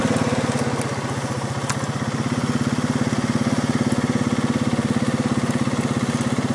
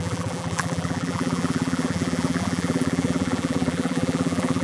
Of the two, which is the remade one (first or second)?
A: second